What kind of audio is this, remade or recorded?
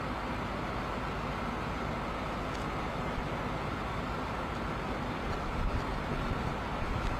recorded